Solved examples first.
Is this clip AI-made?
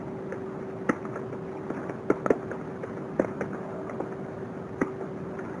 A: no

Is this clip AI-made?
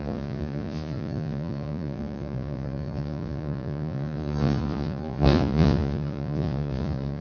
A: yes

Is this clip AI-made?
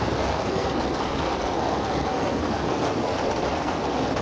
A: yes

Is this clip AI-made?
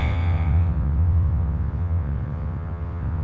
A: yes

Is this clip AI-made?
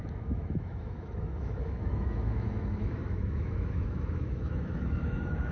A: yes